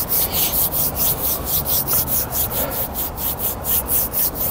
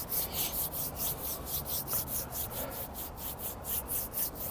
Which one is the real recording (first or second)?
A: second